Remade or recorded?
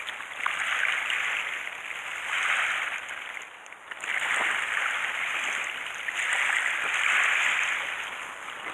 recorded